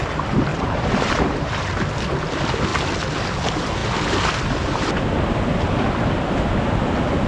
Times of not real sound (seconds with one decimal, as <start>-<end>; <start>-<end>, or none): 0.5-1.7